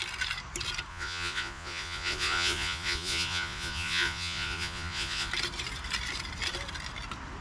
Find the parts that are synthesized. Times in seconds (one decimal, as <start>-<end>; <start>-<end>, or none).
0.9-5.3